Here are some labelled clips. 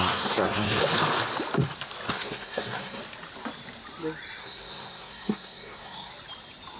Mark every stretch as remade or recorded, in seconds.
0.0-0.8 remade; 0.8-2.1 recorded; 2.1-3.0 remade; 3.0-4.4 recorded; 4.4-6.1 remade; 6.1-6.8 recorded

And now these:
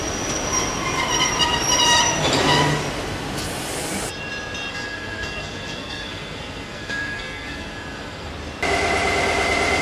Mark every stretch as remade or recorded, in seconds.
0.0-4.7 recorded; 4.7-8.3 remade; 8.3-9.8 recorded